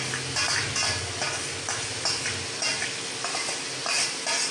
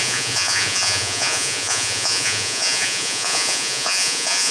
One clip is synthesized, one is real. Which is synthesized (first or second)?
second